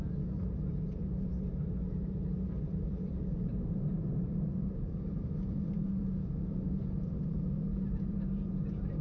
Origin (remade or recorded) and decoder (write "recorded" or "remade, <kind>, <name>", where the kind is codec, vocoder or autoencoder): remade, vocoder, BigVGAN v2